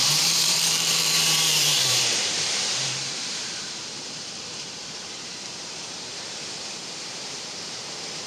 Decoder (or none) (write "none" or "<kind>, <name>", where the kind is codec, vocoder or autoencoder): vocoder, BigVGAN v2